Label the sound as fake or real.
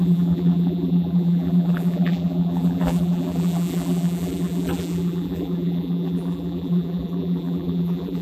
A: fake